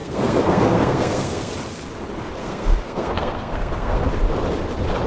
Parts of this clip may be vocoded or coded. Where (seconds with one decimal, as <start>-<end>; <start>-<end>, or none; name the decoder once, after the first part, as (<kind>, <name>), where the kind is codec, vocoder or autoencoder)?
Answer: 0.0-1.5 (codec, SNAC); 2.4-4.0